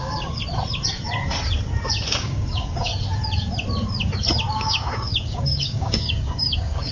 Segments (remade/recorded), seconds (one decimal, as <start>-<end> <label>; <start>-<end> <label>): 0.0-0.4 remade; 0.4-2.2 recorded; 2.2-2.9 remade; 2.9-4.5 recorded; 4.5-6.9 remade